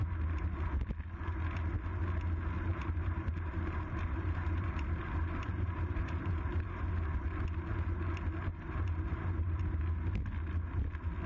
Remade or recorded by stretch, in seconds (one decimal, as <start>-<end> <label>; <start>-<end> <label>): 0.0-2.7 recorded; 2.7-6.8 remade; 6.8-8.5 recorded; 8.5-9.6 remade; 9.6-11.3 recorded